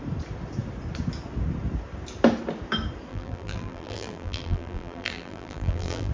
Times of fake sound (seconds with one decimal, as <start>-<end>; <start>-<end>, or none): 3.1-6.1